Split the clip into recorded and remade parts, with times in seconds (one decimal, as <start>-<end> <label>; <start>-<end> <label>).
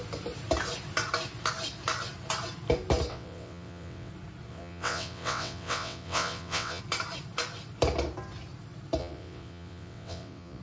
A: 0.0-3.1 recorded; 3.1-4.1 remade; 4.1-4.5 recorded; 4.5-6.8 remade; 6.8-9.0 recorded; 9.0-10.6 remade